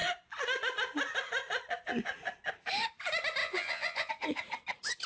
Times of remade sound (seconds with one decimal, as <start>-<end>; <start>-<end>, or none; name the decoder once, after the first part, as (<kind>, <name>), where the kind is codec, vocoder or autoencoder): 3.4-4.1 (vocoder, Vocos)